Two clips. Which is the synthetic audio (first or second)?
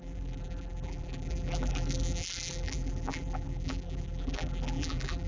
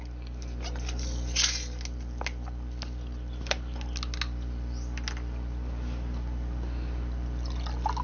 first